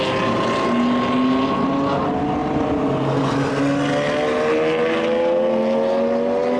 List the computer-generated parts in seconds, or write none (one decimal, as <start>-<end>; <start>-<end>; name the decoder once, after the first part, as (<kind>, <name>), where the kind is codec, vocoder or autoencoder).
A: 2.4-3.5 (vocoder, BigVGAN v2)

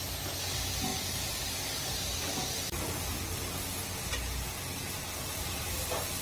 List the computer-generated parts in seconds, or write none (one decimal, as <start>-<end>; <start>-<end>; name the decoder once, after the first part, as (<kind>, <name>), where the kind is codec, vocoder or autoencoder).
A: 0.9-1.4 (vocoder, BigVGAN v2)

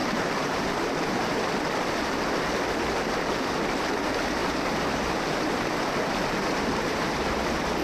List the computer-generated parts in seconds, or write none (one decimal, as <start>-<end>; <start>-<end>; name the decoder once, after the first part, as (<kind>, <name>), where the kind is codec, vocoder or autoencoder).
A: 0.0-0.8 (vocoder, BigVGAN v2)

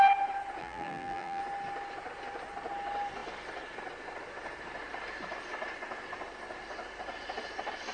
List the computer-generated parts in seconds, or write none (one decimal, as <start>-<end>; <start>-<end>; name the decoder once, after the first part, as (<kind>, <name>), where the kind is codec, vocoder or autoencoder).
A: 0.6-1.4 (vocoder, BigVGAN v2)

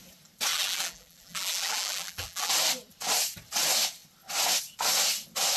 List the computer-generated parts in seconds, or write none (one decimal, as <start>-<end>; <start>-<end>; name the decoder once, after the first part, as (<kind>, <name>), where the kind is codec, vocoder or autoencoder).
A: 0.5-2.5 (vocoder, BigVGAN v2)

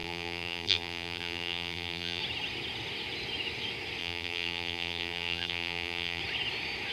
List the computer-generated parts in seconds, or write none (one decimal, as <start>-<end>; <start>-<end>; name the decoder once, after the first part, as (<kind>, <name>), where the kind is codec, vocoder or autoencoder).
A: 0.0-2.2 (vocoder, BigVGAN v2); 4.0-6.2

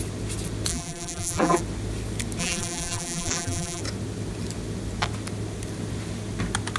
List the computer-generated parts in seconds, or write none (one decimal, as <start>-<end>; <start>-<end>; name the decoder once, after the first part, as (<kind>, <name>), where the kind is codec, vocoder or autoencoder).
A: 0.7-1.6 (vocoder, BigVGAN v2); 2.4-3.8